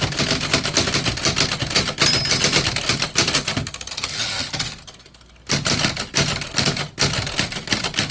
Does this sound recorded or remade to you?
recorded